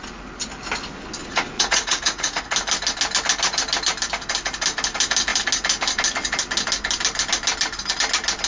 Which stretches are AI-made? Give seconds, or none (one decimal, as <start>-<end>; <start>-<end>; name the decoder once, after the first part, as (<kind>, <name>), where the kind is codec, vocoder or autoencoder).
1.2-2.5 (vocoder, Vocos)